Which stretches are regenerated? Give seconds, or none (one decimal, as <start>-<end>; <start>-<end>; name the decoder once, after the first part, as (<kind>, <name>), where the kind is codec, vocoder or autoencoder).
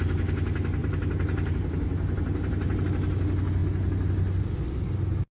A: 0.8-2.8 (vocoder, BigVGAN v2)